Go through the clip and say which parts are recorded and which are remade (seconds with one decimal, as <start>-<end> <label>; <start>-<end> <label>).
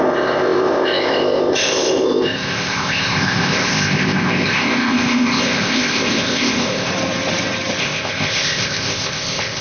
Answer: 0.0-6.9 remade; 6.9-7.8 recorded; 7.8-9.6 remade